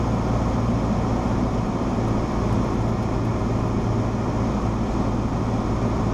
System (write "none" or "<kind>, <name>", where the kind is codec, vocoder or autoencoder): none